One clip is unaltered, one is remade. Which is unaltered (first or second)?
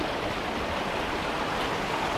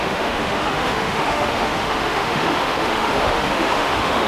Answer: first